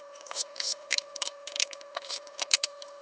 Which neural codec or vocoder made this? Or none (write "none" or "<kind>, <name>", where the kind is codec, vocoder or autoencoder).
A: autoencoder, DAC-VAE